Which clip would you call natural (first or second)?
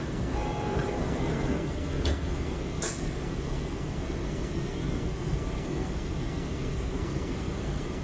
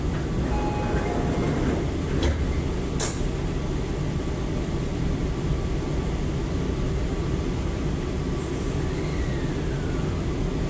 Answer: second